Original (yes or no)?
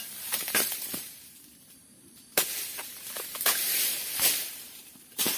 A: no